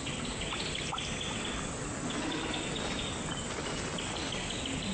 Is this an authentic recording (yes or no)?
yes